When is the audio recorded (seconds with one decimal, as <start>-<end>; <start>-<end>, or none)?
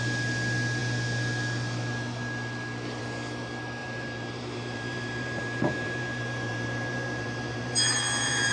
0.0-3.8